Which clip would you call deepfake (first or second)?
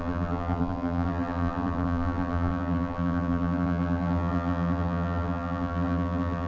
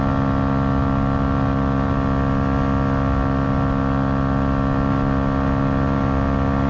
first